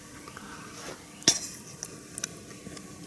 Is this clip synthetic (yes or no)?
no